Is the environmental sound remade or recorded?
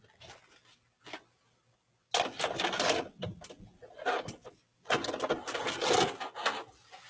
recorded